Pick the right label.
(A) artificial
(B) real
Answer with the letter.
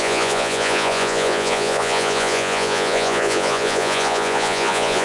A